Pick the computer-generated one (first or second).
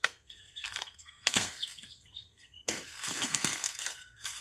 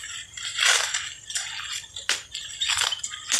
first